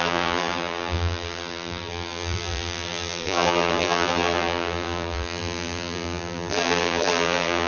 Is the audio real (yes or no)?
no